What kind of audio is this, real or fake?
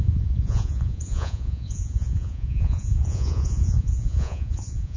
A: fake